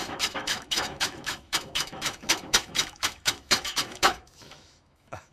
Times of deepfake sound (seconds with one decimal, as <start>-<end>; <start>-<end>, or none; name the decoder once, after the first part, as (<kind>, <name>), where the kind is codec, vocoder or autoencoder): 0.0-5.3 (autoencoder, DAC-VAE)

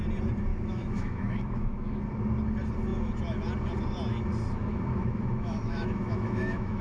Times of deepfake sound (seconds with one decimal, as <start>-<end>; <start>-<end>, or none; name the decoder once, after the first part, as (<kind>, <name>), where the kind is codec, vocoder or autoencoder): 0.5-2.0 (autoencoder, DAC-VAE); 4.7-6.8

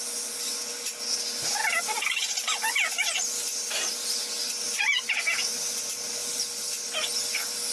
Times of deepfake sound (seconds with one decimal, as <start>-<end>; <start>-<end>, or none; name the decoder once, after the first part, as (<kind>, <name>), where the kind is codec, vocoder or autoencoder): none

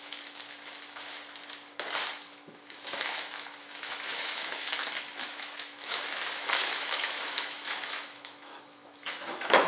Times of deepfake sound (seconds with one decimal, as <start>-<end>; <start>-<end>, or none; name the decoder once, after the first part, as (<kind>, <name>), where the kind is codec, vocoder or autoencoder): 0.0-1.2 (autoencoder, DAC-VAE); 2.1-9.7

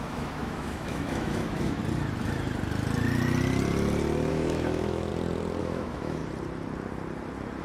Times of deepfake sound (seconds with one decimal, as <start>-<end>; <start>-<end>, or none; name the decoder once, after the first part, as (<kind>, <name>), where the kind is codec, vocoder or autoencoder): 0.0-1.8 (autoencoder, DAC-VAE); 4.3-5.1; 5.6-6.2

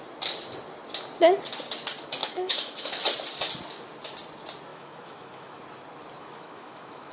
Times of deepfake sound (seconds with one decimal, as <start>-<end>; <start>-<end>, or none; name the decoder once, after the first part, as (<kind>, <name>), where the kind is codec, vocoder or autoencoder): 2.2-3.0 (autoencoder, DAC-VAE); 4.7-5.6; 6.2-7.1

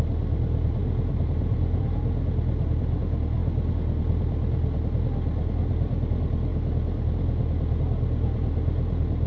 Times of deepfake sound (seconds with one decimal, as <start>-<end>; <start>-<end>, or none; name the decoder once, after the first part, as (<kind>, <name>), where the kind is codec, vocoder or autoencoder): none

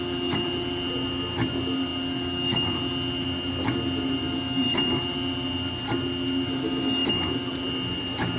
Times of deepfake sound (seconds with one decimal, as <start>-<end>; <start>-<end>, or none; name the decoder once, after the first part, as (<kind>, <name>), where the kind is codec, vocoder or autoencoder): none